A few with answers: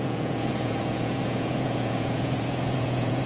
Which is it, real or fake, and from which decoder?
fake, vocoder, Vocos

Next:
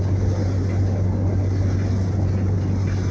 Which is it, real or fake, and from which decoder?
real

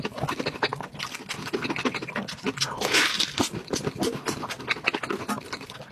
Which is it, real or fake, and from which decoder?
real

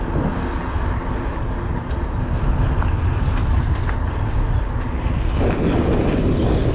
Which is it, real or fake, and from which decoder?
real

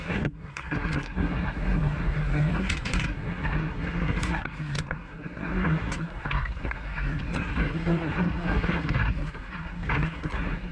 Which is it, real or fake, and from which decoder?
fake, codec, SNAC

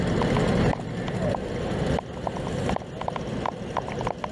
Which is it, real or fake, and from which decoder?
real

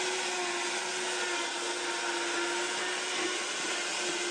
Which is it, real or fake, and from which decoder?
real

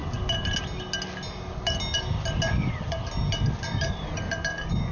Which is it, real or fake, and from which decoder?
real